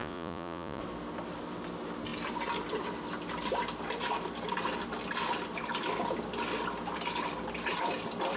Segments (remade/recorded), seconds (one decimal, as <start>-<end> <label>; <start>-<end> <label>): 0.0-0.8 remade; 0.8-8.4 recorded